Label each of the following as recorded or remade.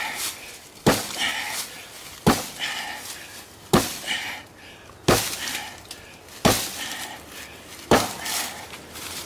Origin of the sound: recorded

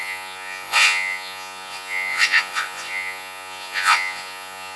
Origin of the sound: remade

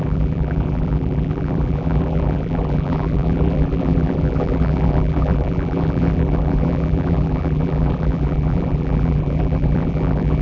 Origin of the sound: remade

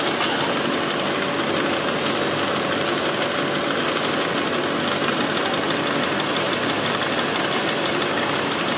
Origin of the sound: recorded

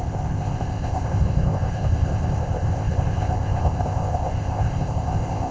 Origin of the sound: remade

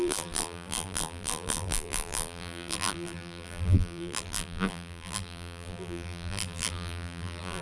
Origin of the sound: remade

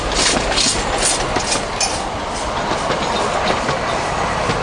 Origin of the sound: recorded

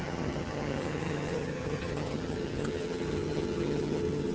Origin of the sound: remade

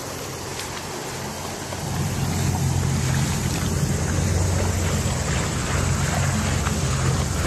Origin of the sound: recorded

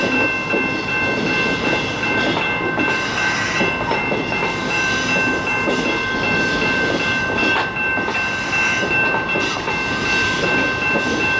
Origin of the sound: recorded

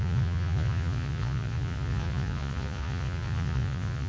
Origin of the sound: remade